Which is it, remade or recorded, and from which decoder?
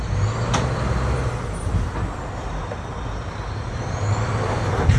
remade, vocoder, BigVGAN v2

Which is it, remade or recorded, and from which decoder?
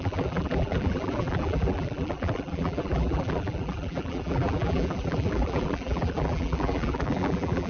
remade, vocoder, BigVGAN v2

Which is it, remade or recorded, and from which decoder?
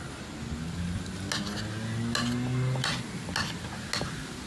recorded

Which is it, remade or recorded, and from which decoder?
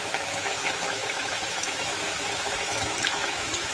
remade, autoencoder, DAC-VAE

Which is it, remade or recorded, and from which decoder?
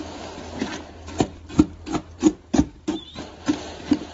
recorded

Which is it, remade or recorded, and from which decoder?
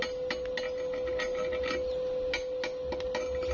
recorded